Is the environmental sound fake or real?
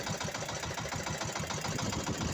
real